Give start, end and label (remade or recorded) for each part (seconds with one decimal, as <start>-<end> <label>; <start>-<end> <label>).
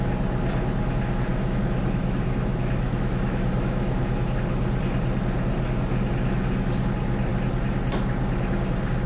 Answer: 0.0-1.3 recorded; 1.3-4.4 remade; 4.4-9.1 recorded